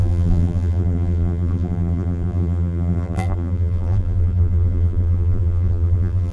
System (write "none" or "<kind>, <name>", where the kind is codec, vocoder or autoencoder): vocoder, BigVGAN v2